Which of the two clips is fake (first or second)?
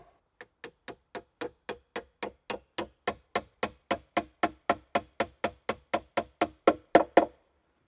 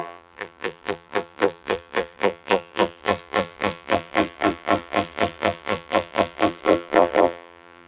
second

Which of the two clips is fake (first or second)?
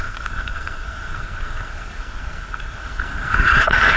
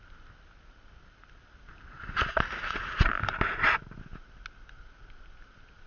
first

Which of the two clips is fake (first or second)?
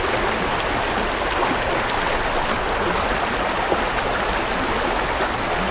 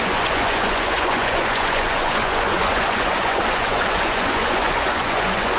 second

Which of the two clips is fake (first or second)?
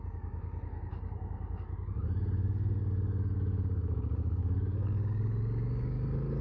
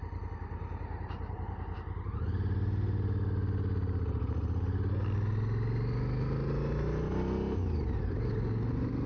first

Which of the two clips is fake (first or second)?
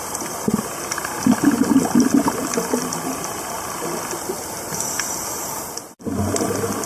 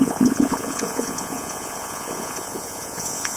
second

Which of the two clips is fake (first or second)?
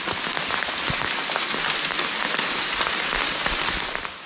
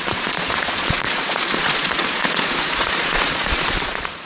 second